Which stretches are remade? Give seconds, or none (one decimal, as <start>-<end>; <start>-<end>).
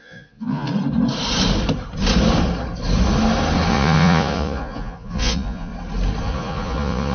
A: 0.0-0.7; 3.7-5.7; 6.2-7.1